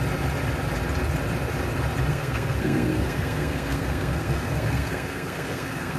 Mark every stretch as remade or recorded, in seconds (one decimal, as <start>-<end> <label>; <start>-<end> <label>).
0.0-2.1 recorded; 2.1-6.0 remade

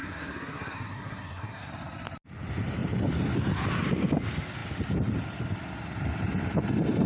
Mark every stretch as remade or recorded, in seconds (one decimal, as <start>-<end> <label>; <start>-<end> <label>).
0.0-1.7 remade; 1.7-7.1 recorded

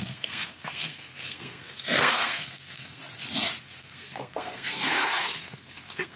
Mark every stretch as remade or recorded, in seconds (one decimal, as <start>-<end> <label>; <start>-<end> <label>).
0.0-3.0 remade; 3.0-3.6 recorded; 3.6-6.2 remade

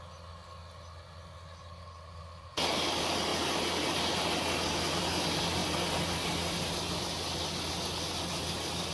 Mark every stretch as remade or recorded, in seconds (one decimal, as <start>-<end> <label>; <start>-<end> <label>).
0.0-8.9 recorded

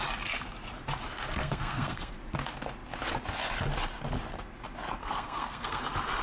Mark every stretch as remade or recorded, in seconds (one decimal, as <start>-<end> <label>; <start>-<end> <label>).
0.0-1.4 recorded; 1.4-2.1 remade; 2.1-5.0 recorded; 5.0-5.8 remade; 5.8-6.2 recorded

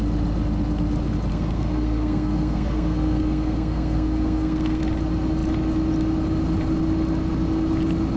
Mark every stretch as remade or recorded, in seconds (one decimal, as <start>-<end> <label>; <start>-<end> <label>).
0.0-1.3 recorded; 1.3-4.8 remade; 4.8-8.2 recorded

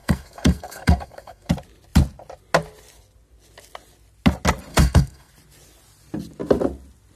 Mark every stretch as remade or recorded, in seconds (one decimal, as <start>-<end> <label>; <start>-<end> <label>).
0.0-1.5 remade; 1.5-4.7 recorded; 4.7-5.3 remade; 5.3-7.2 recorded

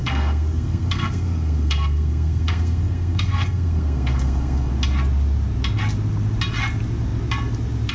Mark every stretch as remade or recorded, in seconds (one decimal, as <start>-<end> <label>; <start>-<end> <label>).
0.0-4.7 remade; 4.7-7.9 recorded